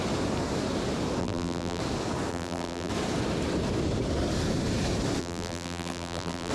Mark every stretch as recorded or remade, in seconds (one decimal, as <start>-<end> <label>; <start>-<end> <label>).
0.0-1.2 recorded; 1.2-1.8 remade; 1.8-2.3 recorded; 2.3-2.9 remade; 2.9-5.2 recorded; 5.2-6.5 remade

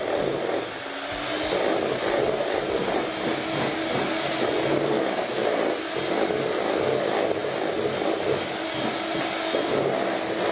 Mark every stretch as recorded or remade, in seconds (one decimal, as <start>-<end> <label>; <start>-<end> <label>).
0.0-10.5 recorded

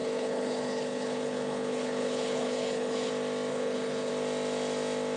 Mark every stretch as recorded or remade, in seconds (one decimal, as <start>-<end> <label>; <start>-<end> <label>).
0.0-3.1 remade; 3.1-3.5 recorded; 3.5-4.1 remade; 4.1-5.2 recorded

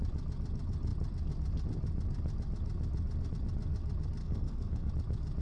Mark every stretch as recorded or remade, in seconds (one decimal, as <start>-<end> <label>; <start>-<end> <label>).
0.0-4.2 recorded; 4.2-4.9 remade; 4.9-5.4 recorded

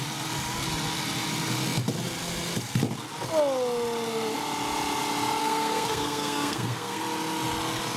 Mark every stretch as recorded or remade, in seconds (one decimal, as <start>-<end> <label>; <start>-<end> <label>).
0.0-5.4 recorded; 5.4-7.0 remade; 7.0-8.0 recorded

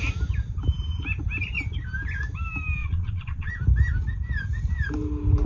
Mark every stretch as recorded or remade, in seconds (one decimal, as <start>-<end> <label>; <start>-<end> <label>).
0.0-2.8 recorded; 2.8-3.5 remade; 3.5-5.5 recorded